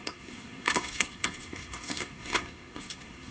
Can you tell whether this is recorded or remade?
remade